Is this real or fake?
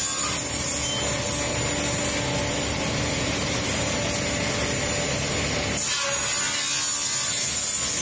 real